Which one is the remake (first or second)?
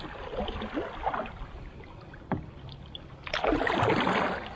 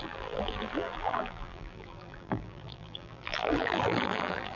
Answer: second